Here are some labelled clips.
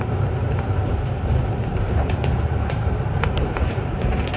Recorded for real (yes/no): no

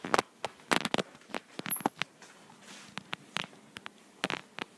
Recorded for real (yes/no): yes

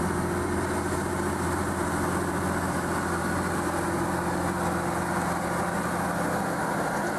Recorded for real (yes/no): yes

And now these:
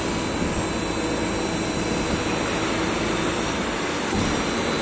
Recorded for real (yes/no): yes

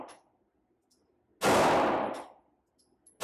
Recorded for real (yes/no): yes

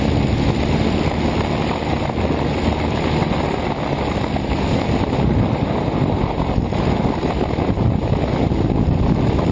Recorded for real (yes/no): yes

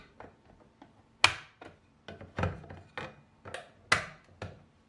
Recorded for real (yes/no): yes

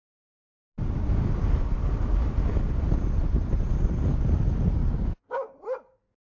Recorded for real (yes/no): yes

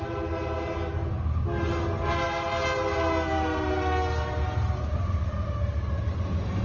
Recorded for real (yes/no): yes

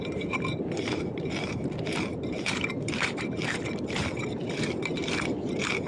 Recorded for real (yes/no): no